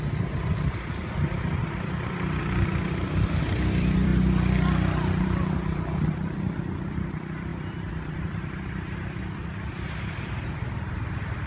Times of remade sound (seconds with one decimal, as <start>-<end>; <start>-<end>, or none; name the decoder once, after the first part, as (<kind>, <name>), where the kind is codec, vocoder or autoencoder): 0.0-4.1 (vocoder, BigVGAN v2); 5.2-11.5